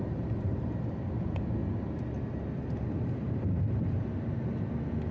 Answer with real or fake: real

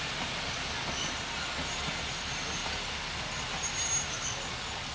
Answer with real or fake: real